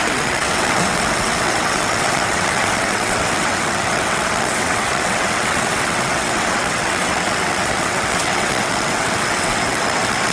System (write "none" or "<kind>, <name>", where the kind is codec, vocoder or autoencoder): vocoder, WaveNeXt